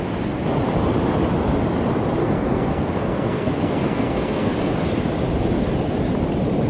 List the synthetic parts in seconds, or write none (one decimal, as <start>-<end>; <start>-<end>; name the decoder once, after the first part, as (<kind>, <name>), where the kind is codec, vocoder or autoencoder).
2.2-4.5 (codec, SNAC)